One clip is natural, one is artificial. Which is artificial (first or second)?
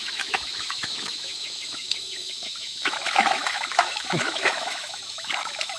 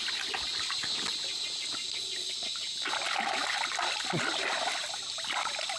first